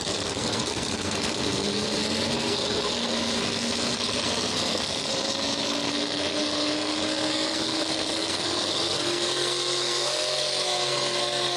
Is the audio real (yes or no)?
no